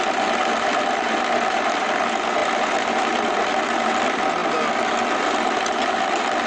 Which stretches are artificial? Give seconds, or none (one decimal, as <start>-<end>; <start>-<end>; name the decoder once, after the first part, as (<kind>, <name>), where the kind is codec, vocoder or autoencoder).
none